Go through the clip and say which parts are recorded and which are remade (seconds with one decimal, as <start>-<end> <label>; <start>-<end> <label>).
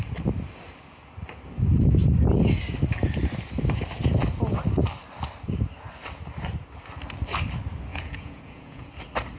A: 0.0-7.9 recorded; 7.9-8.9 remade; 8.9-9.4 recorded